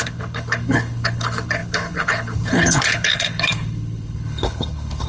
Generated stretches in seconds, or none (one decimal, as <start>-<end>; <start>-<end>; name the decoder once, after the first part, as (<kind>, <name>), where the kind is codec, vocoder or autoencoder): 0.0-5.1 (codec, HILCodec)